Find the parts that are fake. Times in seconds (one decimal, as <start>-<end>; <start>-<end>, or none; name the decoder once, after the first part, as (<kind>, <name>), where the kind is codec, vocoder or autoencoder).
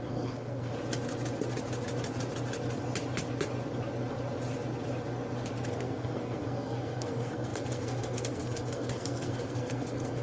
0.0-0.7 (codec, SNAC); 5.7-10.2